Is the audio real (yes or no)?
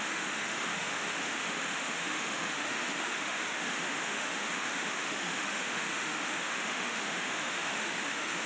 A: no